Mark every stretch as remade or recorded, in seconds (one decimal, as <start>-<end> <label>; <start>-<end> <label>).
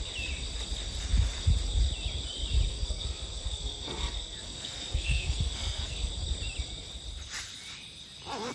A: 0.0-2.7 recorded; 2.7-6.1 remade; 6.1-8.5 recorded